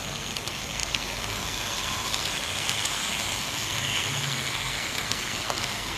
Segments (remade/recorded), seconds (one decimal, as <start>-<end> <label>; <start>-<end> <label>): 0.0-6.0 remade